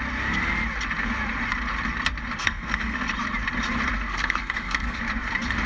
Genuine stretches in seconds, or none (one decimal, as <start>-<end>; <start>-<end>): 0.0-2.4; 3.0-4.1; 5.0-5.7